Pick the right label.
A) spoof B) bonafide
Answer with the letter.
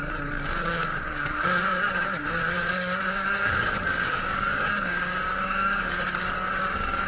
A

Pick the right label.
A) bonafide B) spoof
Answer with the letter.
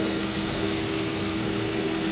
B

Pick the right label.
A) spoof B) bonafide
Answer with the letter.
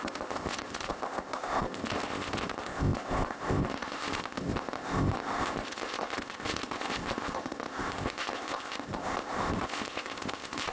A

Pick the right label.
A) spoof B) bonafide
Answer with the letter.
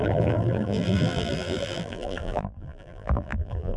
A